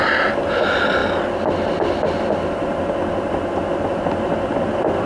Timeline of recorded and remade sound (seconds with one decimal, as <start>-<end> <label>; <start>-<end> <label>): 0.0-5.1 recorded